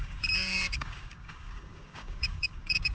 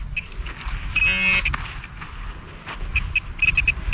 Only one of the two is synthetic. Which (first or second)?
first